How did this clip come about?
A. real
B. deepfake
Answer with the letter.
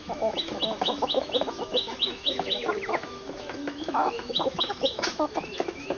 B